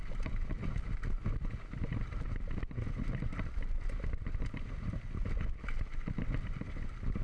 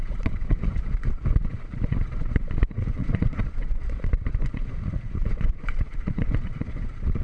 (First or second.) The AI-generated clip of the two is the second